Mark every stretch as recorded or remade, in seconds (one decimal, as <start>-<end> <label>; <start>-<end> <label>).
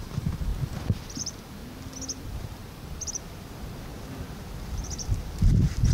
0.0-0.5 remade; 0.5-1.2 recorded; 1.2-1.6 remade; 1.6-2.2 recorded; 2.2-2.6 remade; 2.6-3.1 recorded; 3.1-5.9 remade